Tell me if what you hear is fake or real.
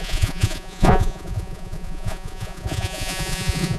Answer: fake